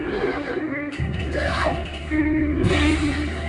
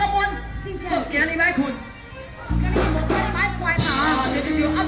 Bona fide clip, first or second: second